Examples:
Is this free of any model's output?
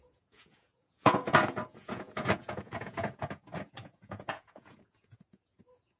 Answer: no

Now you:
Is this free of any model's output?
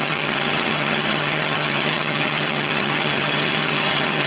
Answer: no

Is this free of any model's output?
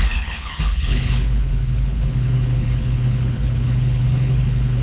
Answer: no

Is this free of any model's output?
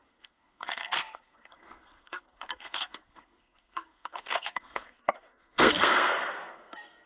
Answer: no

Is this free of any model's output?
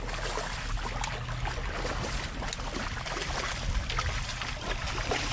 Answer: yes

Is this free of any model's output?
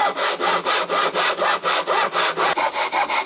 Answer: yes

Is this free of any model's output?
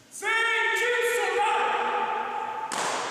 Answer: yes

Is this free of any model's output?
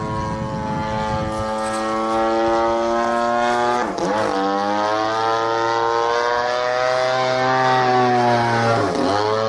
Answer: yes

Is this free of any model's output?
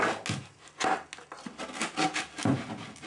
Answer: yes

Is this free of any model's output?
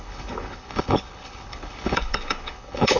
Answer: no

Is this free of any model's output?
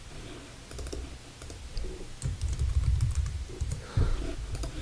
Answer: yes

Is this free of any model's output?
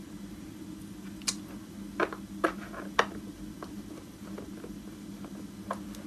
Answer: yes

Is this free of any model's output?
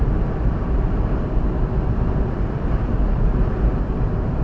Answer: yes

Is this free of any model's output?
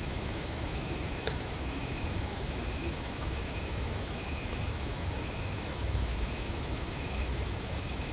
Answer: no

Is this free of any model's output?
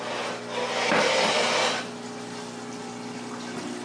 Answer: yes